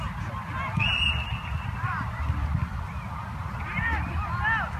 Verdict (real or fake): fake